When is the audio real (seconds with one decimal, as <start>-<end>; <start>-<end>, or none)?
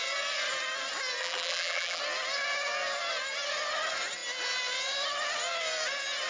0.0-1.2; 2.0-6.3